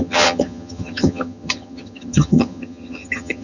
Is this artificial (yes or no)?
yes